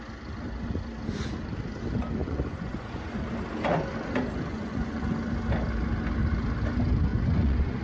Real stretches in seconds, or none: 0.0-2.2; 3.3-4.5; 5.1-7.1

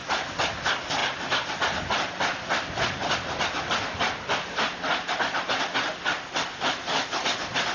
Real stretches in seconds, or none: 0.0-7.7

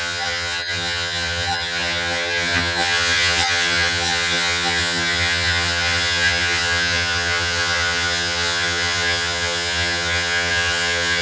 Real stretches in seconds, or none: none

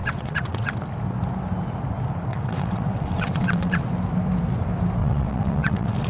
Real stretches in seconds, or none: 0.7-2.3; 3.9-5.0

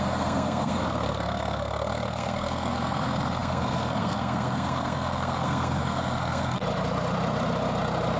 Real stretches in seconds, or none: 6.6-8.2